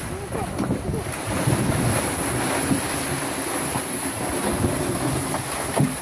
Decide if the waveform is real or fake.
real